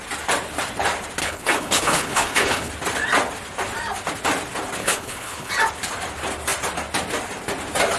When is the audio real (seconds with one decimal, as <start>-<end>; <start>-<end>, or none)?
0.0-1.2; 2.7-4.8; 5.5-8.0